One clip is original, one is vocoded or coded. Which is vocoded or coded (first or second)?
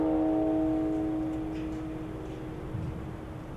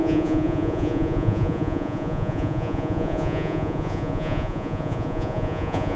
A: second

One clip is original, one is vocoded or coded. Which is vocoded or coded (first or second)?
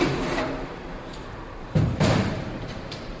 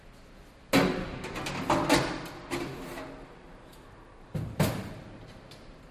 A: first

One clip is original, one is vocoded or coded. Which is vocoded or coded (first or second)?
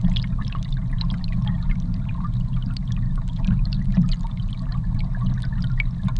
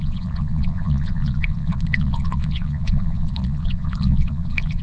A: second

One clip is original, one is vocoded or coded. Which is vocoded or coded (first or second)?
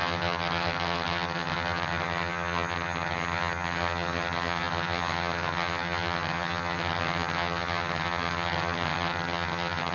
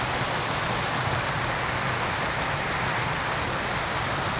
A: first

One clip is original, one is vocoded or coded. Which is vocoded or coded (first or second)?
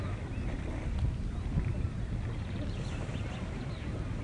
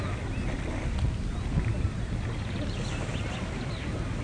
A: first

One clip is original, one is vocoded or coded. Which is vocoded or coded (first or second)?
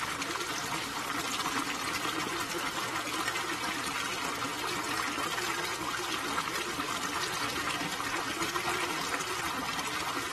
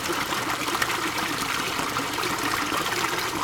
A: second